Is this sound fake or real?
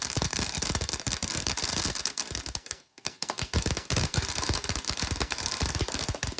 fake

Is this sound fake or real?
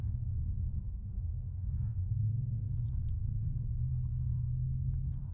fake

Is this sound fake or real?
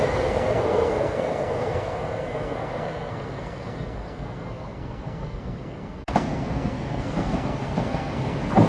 fake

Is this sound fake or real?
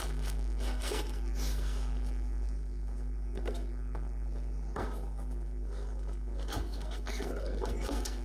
fake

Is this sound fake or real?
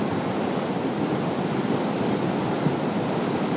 real